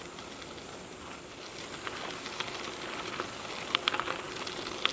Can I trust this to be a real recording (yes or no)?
yes